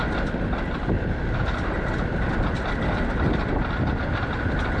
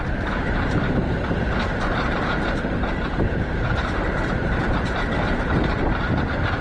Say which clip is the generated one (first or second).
second